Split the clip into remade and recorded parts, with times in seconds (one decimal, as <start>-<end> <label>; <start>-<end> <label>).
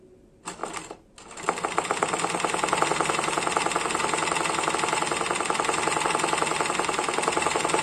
0.0-7.8 recorded